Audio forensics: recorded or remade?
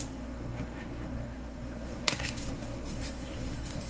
remade